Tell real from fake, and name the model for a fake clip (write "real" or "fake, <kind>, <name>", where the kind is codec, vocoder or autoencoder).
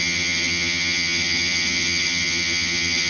fake, vocoder, HiFi-GAN